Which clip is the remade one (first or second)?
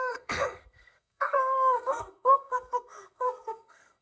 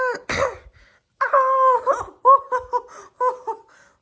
first